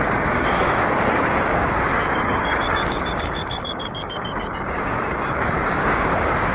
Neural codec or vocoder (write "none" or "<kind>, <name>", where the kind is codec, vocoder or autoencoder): codec, DAC